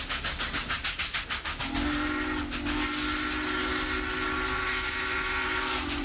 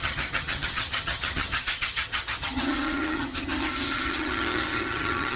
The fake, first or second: second